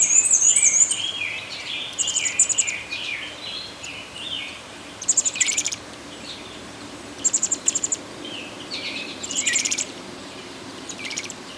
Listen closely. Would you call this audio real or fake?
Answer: fake